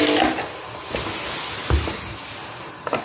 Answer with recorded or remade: recorded